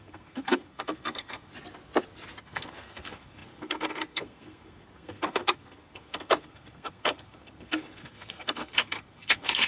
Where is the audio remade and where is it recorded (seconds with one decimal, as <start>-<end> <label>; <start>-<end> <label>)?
0.0-1.5 remade; 1.5-2.4 recorded; 2.4-9.7 remade